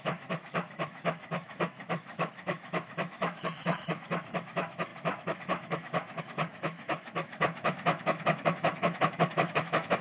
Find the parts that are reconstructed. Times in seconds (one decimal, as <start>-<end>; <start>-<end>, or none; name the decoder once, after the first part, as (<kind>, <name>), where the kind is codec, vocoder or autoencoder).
0.0-10.0 (autoencoder, DAC-VAE)